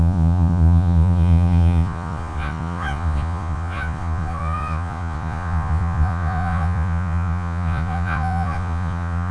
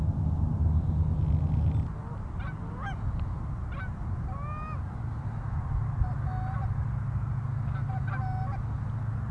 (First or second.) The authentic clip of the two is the second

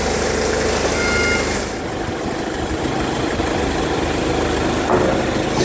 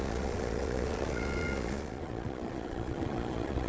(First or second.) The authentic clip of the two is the first